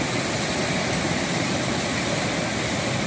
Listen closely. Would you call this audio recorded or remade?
remade